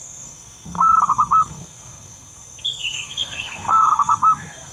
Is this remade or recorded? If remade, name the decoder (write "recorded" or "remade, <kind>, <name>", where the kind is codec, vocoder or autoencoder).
remade, codec, SNAC